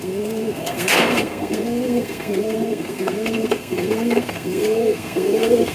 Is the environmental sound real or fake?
fake